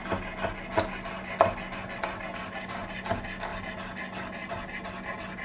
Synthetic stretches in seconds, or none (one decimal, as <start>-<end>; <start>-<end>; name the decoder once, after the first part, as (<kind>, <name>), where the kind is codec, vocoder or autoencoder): none